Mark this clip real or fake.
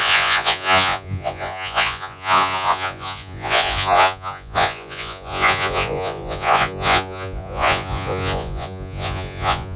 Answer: fake